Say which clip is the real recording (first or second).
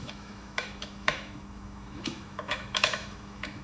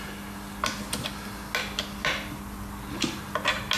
second